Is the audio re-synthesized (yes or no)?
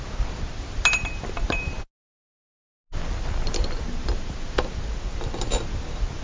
no